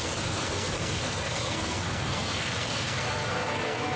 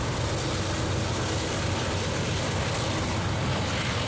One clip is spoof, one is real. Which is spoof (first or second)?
first